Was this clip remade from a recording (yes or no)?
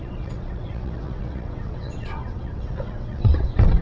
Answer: yes